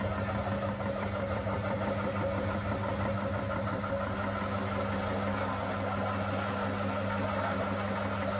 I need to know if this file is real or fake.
real